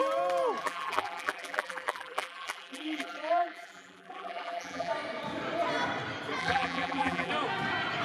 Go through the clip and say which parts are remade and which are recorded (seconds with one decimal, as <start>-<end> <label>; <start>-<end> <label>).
0.0-0.6 recorded; 0.6-4.9 remade; 4.9-6.4 recorded; 6.4-7.3 remade; 7.3-8.0 recorded